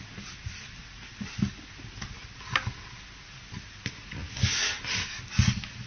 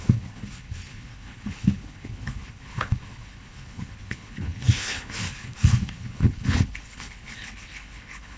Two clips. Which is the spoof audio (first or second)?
second